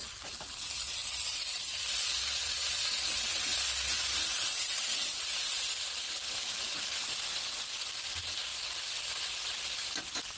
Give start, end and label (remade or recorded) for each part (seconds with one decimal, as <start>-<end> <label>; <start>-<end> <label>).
0.0-8.5 recorded; 8.5-10.4 remade